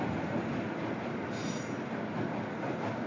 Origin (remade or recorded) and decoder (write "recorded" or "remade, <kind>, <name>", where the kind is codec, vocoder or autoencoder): recorded